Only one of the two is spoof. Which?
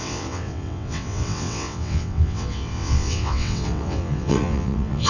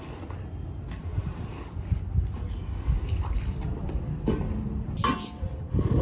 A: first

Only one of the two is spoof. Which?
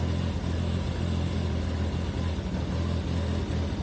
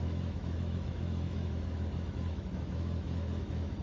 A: second